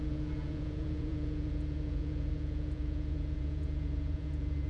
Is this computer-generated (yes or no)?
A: yes